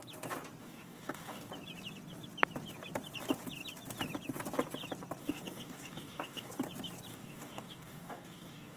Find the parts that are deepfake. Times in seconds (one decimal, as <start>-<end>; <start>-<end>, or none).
0.6-1.5; 5.2-6.5; 7.1-8.8